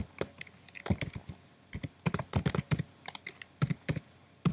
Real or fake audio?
real